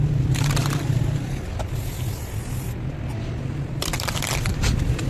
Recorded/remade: recorded